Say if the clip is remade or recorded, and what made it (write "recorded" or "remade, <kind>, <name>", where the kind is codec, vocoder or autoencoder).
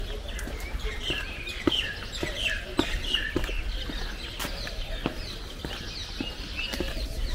recorded